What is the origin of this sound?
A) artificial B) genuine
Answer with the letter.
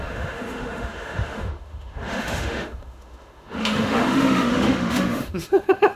A